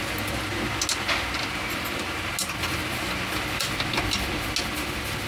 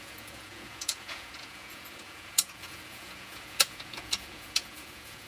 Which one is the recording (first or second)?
first